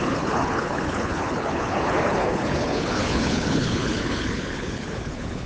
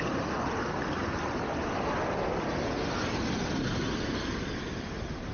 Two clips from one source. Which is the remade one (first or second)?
first